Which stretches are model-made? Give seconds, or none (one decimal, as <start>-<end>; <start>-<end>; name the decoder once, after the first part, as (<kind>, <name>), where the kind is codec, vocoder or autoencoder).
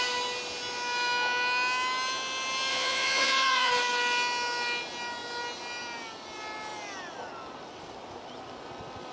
2.7-3.7 (vocoder, Vocos)